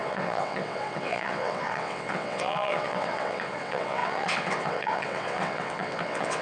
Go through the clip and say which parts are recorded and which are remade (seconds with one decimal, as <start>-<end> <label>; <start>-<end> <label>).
0.0-6.4 remade